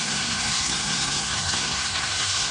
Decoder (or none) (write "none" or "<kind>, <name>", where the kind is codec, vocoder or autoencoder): codec, SNAC